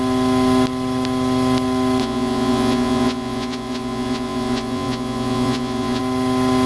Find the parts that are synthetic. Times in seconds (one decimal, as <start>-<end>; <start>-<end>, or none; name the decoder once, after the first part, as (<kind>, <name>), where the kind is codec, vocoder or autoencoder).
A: 2.0-6.0 (vocoder, Vocos)